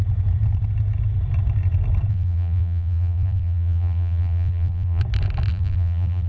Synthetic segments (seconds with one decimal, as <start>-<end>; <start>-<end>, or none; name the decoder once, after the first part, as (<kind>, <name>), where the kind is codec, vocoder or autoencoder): 2.1-5.0 (vocoder, BigVGAN v2); 5.5-6.3